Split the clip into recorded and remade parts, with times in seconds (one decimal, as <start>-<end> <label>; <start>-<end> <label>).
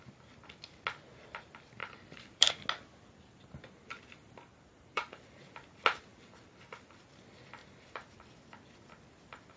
0.0-1.8 recorded; 1.8-2.5 remade; 2.5-4.7 recorded; 4.7-5.4 remade; 5.4-6.1 recorded; 6.1-7.0 remade; 7.0-7.6 recorded; 7.6-8.4 remade; 8.4-9.6 recorded